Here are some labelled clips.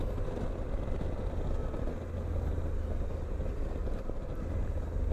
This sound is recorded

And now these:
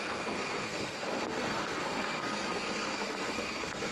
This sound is remade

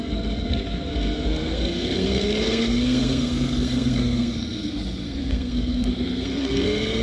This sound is remade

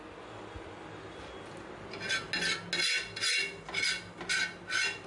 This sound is recorded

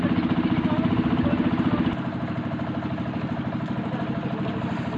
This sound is recorded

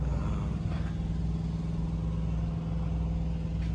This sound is recorded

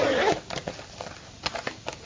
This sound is recorded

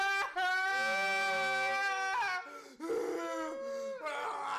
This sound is recorded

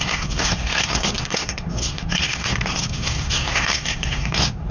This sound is remade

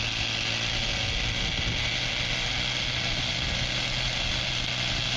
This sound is recorded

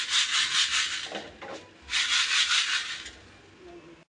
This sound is recorded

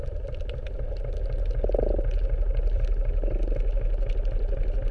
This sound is recorded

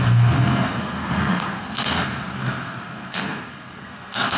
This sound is remade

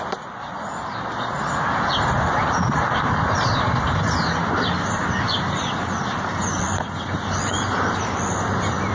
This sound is recorded